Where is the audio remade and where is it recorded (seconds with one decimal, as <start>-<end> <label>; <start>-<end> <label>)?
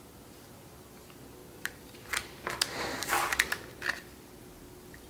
0.0-1.4 recorded; 1.4-3.9 remade; 3.9-5.1 recorded